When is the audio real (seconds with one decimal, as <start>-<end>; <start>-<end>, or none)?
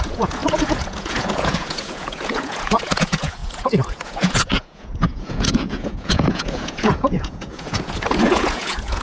none